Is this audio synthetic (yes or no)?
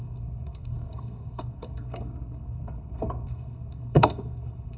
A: yes